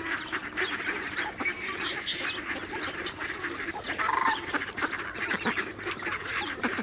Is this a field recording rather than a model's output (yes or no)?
no